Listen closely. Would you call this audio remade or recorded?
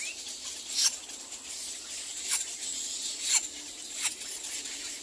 recorded